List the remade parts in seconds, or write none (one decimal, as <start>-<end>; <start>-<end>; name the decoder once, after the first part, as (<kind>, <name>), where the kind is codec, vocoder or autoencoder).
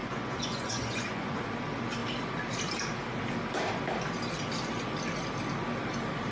0.0-1.4 (vocoder, Vocos)